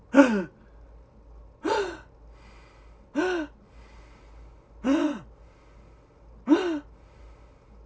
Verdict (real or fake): real